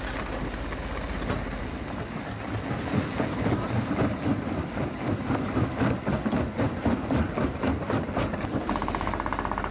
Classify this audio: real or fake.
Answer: real